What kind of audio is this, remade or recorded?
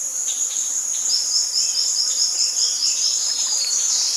remade